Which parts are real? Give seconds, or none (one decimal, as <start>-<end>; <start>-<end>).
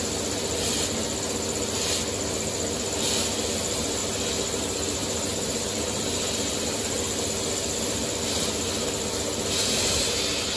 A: 0.0-5.0; 6.8-10.6